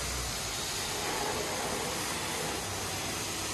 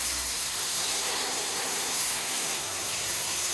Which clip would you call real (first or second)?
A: first